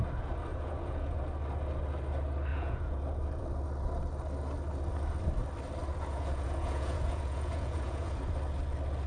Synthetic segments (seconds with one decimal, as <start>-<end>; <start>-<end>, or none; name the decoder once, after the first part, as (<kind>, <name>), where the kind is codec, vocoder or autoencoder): 0.5-1.2 (vocoder, Vocos); 2.5-3.0; 5.9-8.2